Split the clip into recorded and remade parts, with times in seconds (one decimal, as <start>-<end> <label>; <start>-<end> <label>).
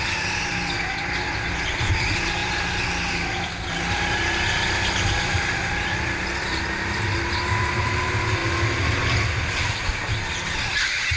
0.0-11.2 recorded